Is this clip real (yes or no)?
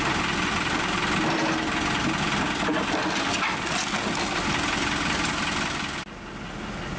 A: yes